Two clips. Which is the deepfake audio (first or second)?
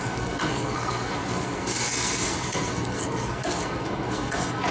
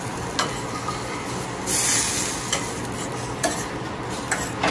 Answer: first